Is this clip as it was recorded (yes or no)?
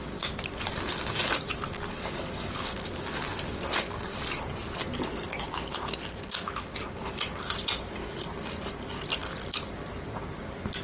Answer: yes